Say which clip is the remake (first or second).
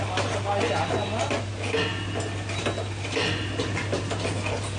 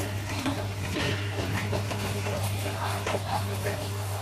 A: second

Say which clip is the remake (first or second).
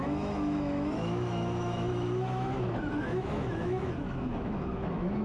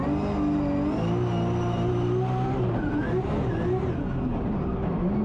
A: first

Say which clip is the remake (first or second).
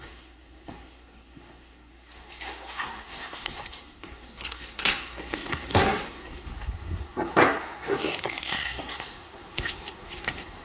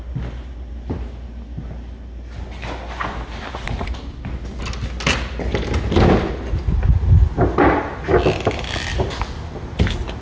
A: first